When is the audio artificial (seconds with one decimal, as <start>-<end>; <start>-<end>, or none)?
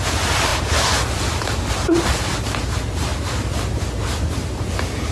0.5-1.7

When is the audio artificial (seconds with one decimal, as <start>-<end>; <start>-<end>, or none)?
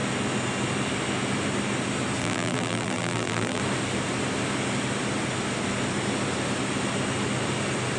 2.2-3.6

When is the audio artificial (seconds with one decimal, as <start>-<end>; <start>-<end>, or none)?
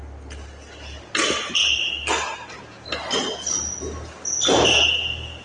none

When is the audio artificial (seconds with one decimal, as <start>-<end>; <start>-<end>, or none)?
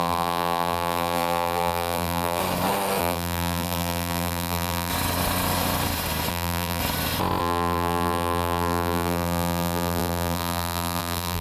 0.0-2.4; 3.0-4.9; 6.3-6.8; 7.4-11.4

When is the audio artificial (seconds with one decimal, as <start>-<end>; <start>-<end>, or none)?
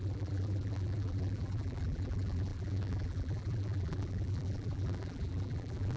0.0-6.0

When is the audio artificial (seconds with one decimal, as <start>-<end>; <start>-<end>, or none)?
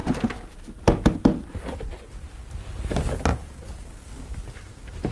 none